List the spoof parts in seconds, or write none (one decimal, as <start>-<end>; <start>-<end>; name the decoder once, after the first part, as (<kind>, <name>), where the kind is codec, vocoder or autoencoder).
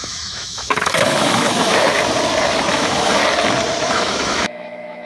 0.0-1.7 (autoencoder, DAC-VAE); 2.7-3.2; 3.9-5.1